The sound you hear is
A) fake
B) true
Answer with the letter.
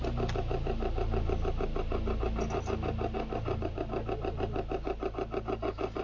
B